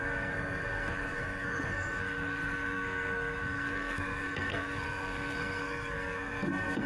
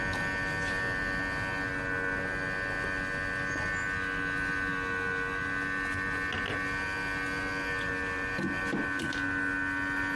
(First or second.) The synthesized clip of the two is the first